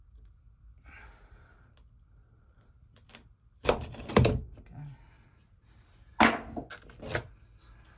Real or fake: real